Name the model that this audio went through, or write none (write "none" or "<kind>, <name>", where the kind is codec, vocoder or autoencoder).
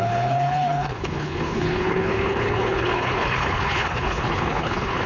codec, HILCodec